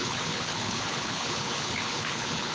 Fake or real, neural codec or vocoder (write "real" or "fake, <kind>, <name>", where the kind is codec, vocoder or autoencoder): fake, codec, HILCodec